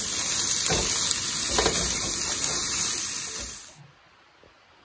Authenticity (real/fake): real